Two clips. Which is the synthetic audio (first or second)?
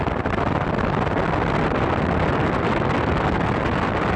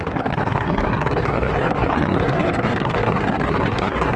second